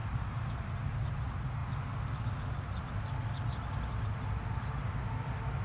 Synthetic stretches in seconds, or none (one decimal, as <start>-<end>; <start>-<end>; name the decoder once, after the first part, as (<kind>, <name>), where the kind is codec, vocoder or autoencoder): 0.0-0.7 (vocoder, BigVGAN v2)

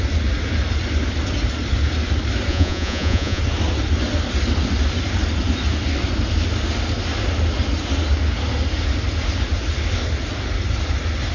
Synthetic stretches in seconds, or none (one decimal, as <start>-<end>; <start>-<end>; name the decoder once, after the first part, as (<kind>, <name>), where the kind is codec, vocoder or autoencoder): 2.5-3.4 (vocoder, Vocos)

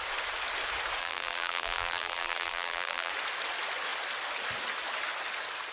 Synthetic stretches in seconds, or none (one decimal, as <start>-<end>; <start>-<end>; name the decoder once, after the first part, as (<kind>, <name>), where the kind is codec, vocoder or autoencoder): 1.0-3.1 (vocoder, BigVGAN v2)